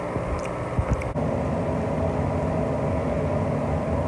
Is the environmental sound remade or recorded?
recorded